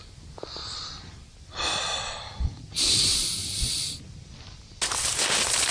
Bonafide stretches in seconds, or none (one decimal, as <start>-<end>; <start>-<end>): 0.0-5.7